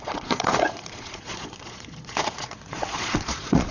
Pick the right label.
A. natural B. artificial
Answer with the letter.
B